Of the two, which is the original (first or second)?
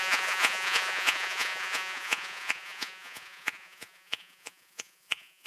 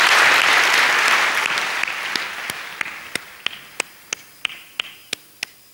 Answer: second